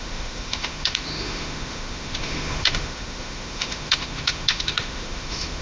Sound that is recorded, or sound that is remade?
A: remade